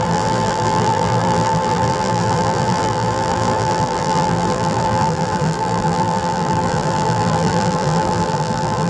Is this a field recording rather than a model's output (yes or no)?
no